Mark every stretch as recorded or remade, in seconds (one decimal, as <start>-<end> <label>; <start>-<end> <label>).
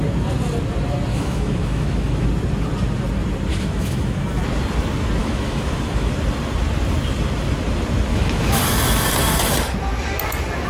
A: 0.0-1.1 recorded; 1.1-2.3 remade; 2.3-3.5 recorded; 3.5-4.2 remade; 4.2-5.2 recorded; 5.2-6.1 remade; 6.1-8.1 recorded; 8.1-8.6 remade; 8.6-10.7 recorded